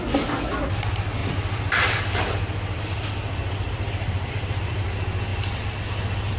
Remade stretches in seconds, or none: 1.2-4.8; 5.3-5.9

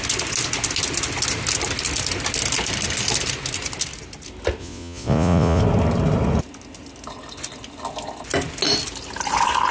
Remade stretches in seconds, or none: 4.6-5.6